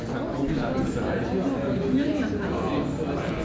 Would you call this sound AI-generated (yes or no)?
no